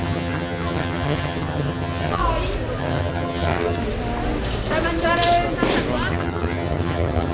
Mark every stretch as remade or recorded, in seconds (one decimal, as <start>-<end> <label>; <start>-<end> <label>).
0.0-2.2 remade; 2.2-2.8 recorded; 2.8-3.8 remade; 3.8-6.1 recorded; 6.1-7.3 remade

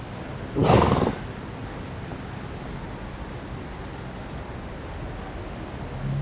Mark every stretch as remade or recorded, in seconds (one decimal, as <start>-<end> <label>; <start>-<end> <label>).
0.0-6.2 recorded

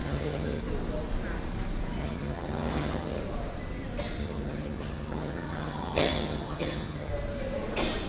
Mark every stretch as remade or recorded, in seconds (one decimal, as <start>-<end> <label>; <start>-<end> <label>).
0.0-0.6 remade; 0.6-2.0 recorded; 2.0-3.2 remade; 3.2-4.2 recorded; 4.2-7.1 remade; 7.1-8.1 recorded

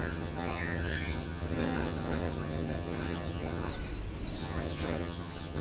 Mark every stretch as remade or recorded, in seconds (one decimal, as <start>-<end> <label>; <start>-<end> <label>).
0.0-3.7 remade; 3.7-4.4 recorded; 4.4-5.6 remade

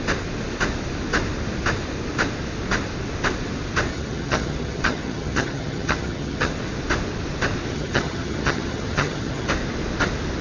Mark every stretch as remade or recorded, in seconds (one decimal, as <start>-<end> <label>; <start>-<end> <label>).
0.0-3.9 recorded; 3.9-6.5 remade; 6.5-7.7 recorded; 7.7-9.5 remade; 9.5-10.4 recorded